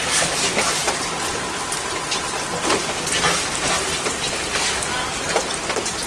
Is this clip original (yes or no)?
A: yes